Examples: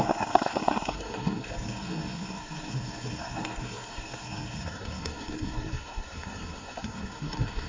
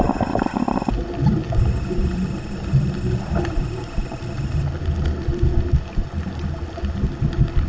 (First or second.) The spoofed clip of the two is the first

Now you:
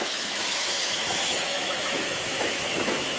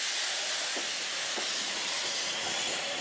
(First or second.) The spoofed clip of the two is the first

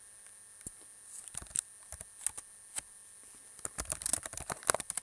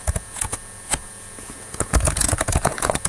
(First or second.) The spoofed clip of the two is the second